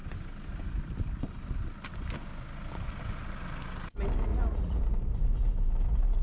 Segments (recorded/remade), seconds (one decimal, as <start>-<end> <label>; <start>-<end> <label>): 0.0-4.3 recorded; 4.3-4.8 remade; 4.8-6.2 recorded